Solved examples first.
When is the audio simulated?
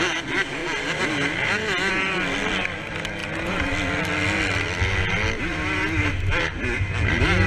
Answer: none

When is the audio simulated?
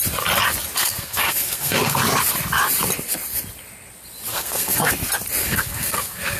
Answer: 0.8-2.0 (codec, SNAC); 4.3-4.9; 5.4-6.4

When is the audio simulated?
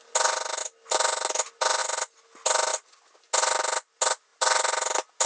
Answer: none